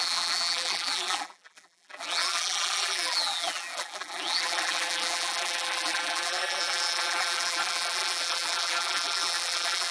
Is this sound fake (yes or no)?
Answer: yes